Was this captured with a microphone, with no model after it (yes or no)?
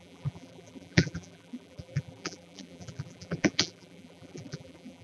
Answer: no